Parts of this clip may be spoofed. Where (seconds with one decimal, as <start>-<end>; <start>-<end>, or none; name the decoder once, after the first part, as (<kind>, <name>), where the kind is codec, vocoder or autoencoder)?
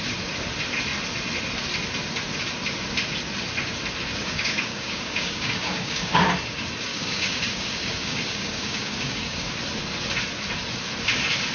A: 4.1-6.3 (codec, DAC); 6.9-9.5